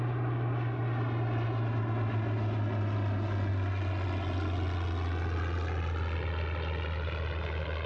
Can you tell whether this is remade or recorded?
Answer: recorded